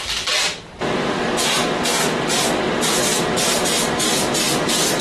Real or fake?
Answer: real